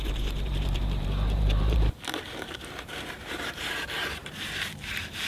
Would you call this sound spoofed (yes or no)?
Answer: yes